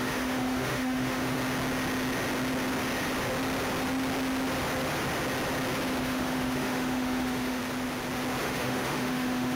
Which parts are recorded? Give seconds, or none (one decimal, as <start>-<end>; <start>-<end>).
1.4-6.0; 7.6-8.4

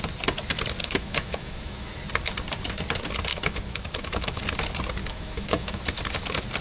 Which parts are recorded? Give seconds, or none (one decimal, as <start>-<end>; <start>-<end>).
0.0-0.8; 1.9-3.3; 4.4-5.0; 5.8-6.6

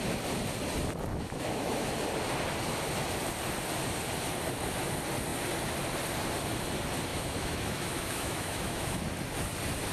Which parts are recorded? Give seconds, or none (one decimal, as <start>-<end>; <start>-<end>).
0.0-1.1; 1.9-7.1; 9.0-9.9

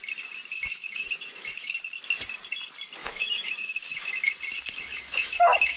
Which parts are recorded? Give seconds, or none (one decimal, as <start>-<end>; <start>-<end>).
0.0-0.6; 1.8-3.0; 4.3-4.9

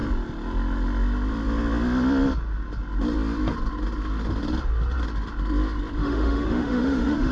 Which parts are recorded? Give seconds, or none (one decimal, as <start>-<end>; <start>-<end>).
0.0-6.0